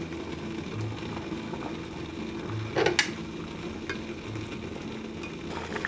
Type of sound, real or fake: real